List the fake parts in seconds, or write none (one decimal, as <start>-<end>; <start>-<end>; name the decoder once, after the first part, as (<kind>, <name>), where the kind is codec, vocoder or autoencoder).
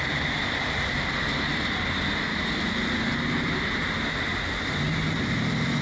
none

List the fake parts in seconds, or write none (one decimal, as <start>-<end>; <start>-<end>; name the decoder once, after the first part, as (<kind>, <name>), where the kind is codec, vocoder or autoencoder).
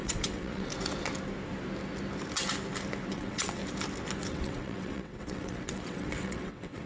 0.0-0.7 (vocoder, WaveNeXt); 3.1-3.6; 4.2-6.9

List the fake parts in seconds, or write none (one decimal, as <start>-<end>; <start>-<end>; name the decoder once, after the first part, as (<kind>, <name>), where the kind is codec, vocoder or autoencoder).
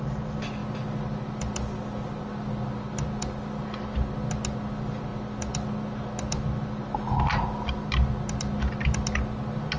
none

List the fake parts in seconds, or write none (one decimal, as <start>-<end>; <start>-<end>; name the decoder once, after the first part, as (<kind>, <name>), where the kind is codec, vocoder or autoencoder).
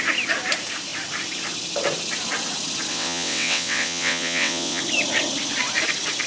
2.9-4.8 (vocoder, WaveNeXt)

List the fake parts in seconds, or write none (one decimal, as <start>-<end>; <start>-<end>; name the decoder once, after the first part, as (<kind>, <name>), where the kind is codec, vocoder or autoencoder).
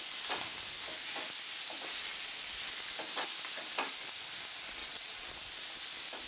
4.8-5.3 (vocoder, WaveNeXt)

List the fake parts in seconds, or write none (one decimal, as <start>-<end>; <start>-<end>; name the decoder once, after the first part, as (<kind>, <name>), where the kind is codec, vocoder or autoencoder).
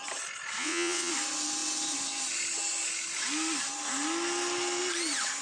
0.6-1.1 (vocoder, WaveNeXt)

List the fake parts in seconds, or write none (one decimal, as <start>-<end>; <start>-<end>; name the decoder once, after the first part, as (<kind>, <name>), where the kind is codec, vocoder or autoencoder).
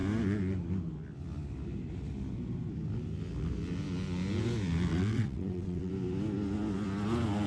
4.9-5.9 (vocoder, WaveNeXt)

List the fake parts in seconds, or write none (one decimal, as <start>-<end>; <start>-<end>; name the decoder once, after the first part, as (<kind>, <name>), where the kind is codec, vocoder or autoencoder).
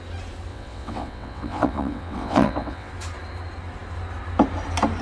0.5-2.9 (vocoder, WaveNeXt)